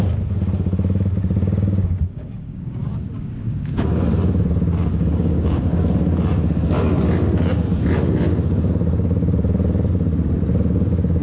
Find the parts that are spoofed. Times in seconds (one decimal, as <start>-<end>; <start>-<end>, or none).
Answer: 1.2-4.0; 4.9-5.6